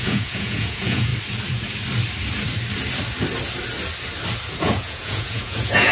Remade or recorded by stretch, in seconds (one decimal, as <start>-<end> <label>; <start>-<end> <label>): 0.0-1.1 remade; 1.1-4.6 recorded; 4.6-5.9 remade